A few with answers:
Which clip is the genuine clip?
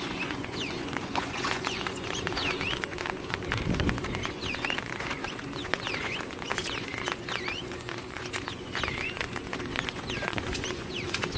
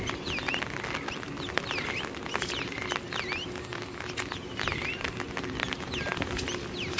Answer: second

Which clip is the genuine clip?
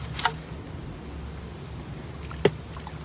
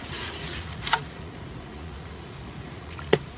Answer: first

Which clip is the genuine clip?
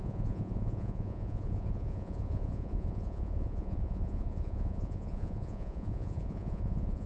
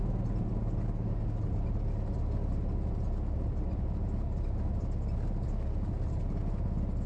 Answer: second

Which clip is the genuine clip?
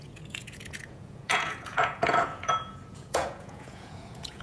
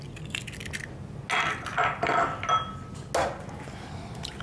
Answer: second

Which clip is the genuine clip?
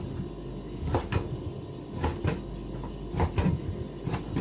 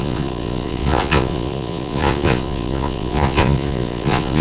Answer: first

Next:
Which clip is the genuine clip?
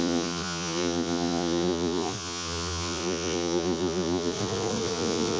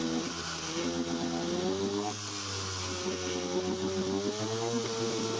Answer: second